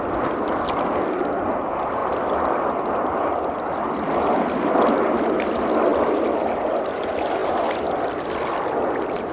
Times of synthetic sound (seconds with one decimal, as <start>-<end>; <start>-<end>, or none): 2.0-2.8; 5.9-6.7